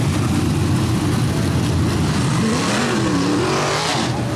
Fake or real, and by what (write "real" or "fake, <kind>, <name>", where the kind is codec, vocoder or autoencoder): real